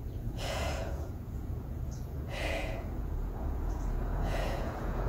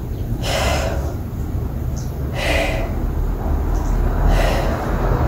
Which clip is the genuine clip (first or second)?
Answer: second